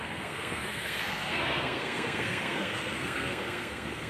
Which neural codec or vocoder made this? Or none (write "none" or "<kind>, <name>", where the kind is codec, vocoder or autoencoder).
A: codec, SNAC